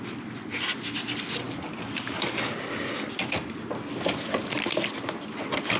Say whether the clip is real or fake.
real